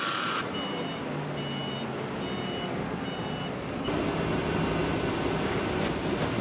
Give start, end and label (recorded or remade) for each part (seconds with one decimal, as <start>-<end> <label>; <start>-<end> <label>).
0.0-6.4 recorded